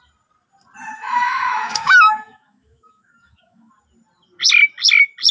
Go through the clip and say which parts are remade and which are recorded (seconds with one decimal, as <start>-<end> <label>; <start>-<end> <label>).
0.0-0.9 recorded; 0.9-3.7 remade; 3.7-5.3 recorded